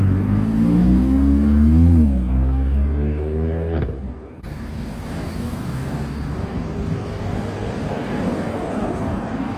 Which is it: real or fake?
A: fake